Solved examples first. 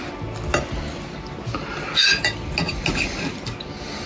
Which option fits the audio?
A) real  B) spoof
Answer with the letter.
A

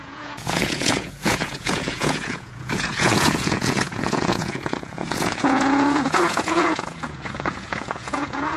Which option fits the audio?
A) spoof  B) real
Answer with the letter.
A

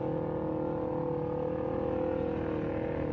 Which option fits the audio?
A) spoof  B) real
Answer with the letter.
B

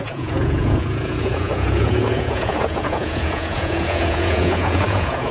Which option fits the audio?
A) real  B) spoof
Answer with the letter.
B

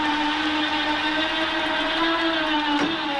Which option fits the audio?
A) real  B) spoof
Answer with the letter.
A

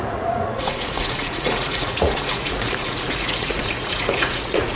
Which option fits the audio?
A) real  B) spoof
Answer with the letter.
B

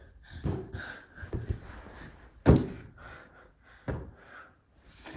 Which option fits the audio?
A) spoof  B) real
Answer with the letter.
B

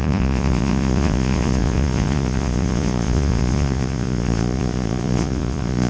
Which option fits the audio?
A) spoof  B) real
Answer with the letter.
A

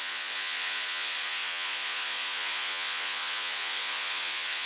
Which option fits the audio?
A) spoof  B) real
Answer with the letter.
A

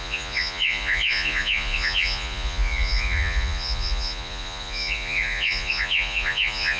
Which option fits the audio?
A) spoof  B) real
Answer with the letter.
A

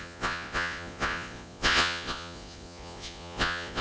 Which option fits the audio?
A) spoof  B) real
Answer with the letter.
A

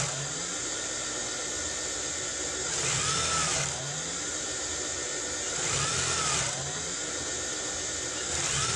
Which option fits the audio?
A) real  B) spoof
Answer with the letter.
A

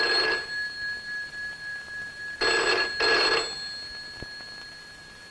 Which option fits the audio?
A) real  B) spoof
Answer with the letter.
A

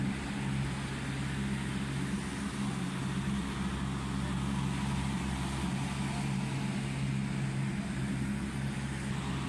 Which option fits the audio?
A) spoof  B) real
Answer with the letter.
B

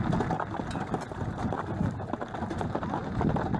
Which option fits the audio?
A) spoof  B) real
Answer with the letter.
B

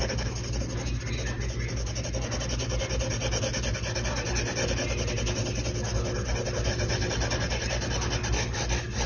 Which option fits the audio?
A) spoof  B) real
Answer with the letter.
B